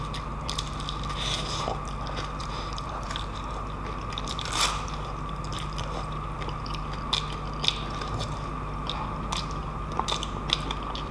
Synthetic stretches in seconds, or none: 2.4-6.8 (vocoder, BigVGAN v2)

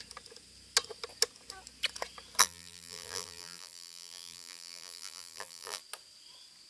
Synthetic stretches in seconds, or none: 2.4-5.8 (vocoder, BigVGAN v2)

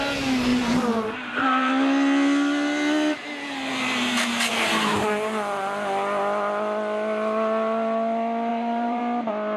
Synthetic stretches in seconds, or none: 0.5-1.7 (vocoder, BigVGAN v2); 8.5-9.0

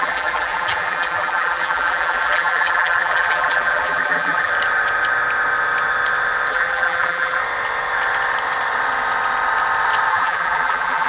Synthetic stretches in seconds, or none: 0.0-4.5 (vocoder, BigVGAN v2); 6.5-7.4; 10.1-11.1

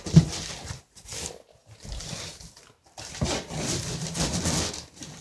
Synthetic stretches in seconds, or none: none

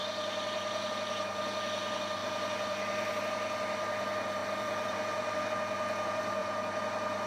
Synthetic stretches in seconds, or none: 0.0-0.9 (vocoder, BigVGAN v2); 4.4-5.5; 6.4-7.3